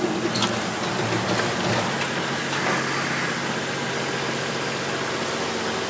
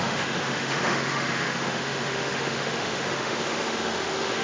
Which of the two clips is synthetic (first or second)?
second